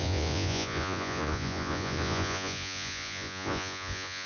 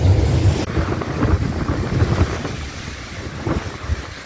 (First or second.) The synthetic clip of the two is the first